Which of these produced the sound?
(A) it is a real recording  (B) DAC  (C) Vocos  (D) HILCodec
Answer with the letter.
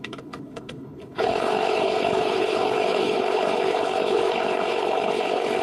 D